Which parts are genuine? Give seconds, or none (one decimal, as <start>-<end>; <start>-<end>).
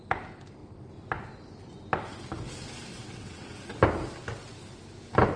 0.0-2.9; 3.8-5.4